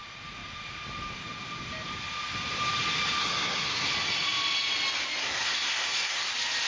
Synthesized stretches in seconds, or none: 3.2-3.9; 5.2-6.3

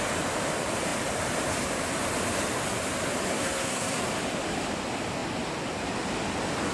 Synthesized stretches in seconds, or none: 3.3-4.0